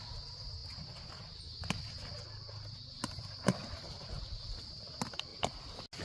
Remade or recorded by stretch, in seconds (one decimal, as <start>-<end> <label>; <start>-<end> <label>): 0.0-6.0 recorded

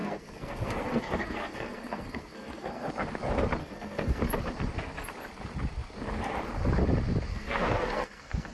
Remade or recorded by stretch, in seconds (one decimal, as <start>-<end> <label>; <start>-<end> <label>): 0.0-2.9 remade; 2.9-3.6 recorded; 3.6-4.2 remade; 4.2-7.3 recorded; 7.3-8.5 remade

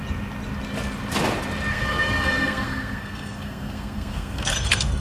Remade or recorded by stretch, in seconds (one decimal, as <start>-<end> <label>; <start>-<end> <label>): 0.0-1.7 recorded; 1.7-5.0 remade

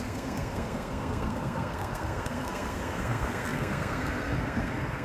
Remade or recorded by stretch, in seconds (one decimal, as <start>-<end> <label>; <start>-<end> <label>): 0.0-5.0 remade

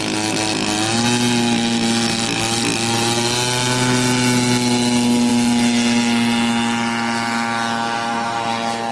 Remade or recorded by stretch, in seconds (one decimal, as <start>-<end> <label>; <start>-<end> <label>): 0.0-8.9 recorded

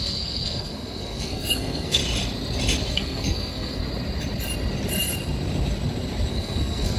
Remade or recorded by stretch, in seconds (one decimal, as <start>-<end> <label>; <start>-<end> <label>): 0.0-2.0 remade; 2.0-2.9 recorded; 2.9-3.8 remade; 3.8-6.3 recorded; 6.3-7.0 remade